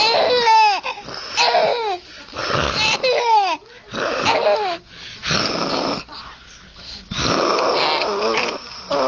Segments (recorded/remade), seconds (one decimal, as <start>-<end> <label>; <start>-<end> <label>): 0.0-9.1 recorded